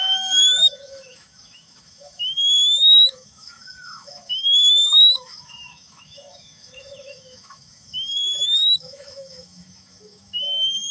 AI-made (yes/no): yes